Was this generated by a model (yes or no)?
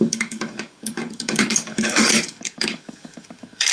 yes